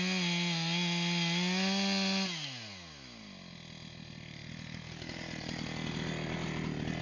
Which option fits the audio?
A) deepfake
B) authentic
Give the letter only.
B